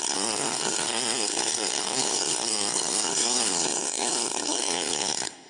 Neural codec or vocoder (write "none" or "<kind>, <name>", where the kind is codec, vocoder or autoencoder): codec, SNAC